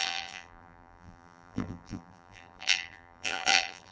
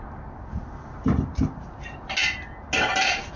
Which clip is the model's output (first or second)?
first